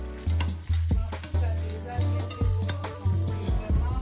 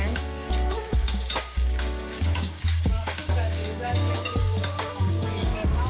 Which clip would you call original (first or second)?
first